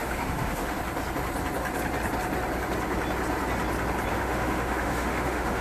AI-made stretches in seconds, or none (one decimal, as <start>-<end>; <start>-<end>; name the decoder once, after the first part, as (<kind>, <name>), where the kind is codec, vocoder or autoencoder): 0.0-0.8 (autoencoder, DAC-VAE); 4.1-5.6